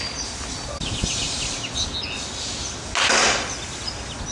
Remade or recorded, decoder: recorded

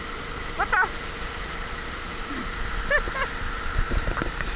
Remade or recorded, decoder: recorded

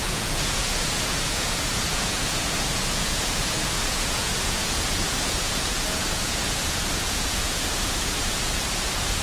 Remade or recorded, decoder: remade, vocoder, Vocos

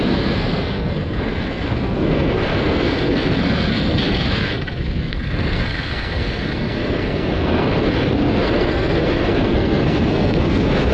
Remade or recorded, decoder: remade, codec, SNAC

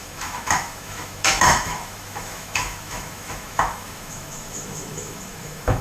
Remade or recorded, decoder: remade, autoencoder, DAC-VAE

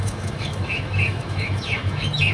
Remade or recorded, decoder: remade, autoencoder, DAC-VAE